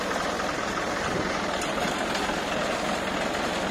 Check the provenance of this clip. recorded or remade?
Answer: recorded